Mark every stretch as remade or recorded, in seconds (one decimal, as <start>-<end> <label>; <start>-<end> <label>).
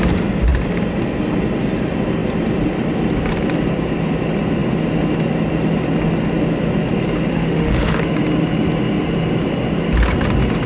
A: 0.0-7.3 recorded; 7.3-8.0 remade; 8.0-10.7 recorded